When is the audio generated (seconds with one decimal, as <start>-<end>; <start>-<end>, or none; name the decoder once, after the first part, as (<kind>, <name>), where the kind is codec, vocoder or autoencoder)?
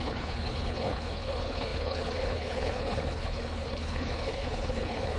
0.0-5.2 (codec, HILCodec)